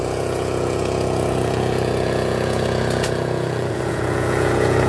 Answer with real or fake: fake